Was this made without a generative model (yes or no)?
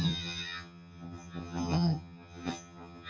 no